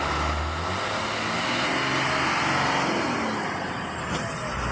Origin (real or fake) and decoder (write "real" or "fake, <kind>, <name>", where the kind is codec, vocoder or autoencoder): real